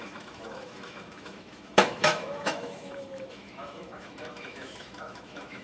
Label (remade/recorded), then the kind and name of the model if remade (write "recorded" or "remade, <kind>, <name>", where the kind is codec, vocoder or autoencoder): remade, autoencoder, DAC-VAE